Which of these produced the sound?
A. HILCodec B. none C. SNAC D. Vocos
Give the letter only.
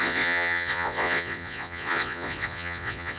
D